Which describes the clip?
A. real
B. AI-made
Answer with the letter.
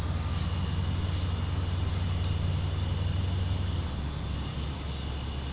A